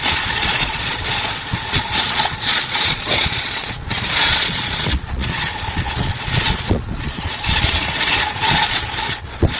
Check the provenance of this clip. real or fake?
fake